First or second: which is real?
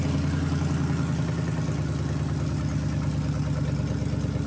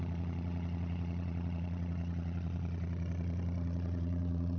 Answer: first